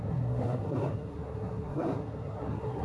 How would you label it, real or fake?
fake